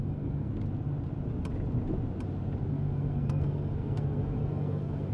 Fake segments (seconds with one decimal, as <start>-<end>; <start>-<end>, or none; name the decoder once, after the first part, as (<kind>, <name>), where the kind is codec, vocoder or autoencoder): 0.0-0.5 (codec, SNAC); 2.7-5.1